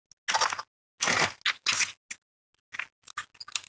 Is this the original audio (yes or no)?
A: yes